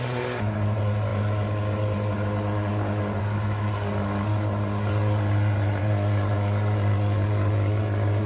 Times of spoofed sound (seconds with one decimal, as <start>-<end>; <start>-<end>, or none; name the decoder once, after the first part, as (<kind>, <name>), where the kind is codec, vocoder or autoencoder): none